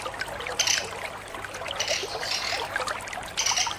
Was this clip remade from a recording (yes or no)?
no